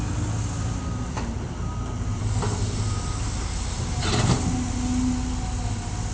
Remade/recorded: recorded